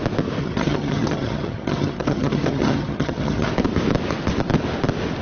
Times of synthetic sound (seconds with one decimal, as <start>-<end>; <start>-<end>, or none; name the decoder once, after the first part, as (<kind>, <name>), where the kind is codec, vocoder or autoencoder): 0.4-3.5 (vocoder, HiFi-GAN)